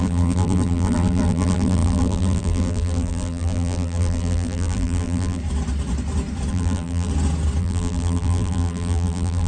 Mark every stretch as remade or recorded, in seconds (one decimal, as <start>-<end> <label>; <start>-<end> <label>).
0.0-5.4 remade; 5.4-6.5 recorded; 6.5-7.1 remade; 7.1-7.6 recorded; 7.6-9.5 remade